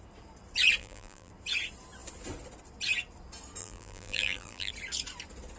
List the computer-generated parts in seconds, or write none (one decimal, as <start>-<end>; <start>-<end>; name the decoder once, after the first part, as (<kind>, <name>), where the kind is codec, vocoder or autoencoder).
0.8-1.3 (vocoder, BigVGAN v2); 3.6-4.7